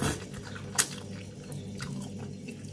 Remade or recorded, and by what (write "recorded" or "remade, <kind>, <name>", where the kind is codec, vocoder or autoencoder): recorded